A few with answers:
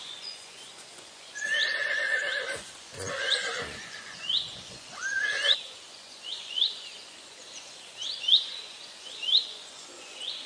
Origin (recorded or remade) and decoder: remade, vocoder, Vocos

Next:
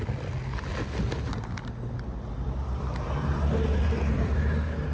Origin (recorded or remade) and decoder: recorded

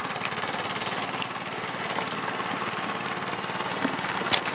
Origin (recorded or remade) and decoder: recorded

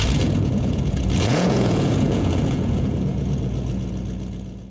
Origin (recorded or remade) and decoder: remade, vocoder, Vocos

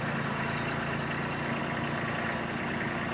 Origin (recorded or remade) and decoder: recorded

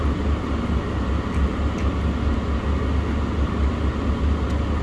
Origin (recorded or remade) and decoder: recorded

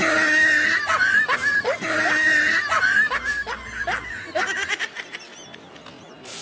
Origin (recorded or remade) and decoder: recorded